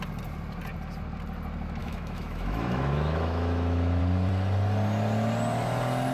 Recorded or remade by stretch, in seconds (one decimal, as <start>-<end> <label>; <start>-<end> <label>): 0.0-1.8 recorded; 1.8-4.0 remade; 4.0-6.1 recorded